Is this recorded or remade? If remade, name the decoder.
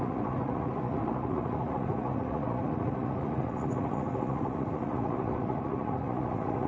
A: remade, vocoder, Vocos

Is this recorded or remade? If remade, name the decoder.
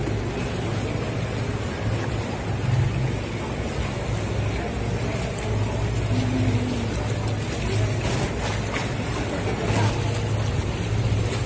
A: recorded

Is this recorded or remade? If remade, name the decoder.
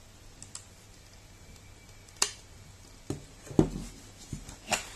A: recorded